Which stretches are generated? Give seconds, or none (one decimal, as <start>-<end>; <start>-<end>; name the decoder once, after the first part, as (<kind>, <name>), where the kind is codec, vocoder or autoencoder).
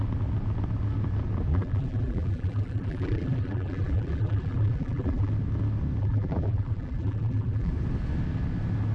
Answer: 1.5-5.3 (vocoder, BigVGAN v2); 6.0-7.7